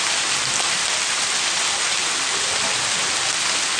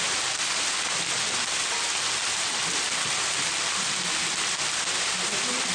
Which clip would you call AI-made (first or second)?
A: second